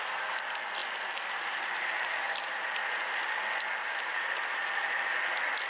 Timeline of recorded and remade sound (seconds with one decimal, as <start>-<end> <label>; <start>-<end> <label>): 0.0-5.7 recorded